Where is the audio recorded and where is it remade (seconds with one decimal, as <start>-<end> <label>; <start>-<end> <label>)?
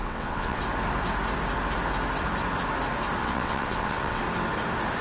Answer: 0.0-0.6 remade; 0.6-3.2 recorded; 3.2-4.2 remade; 4.2-5.0 recorded